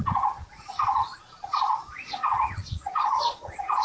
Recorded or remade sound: remade